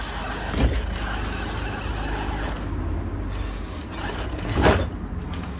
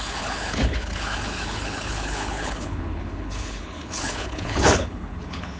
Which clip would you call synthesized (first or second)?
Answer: second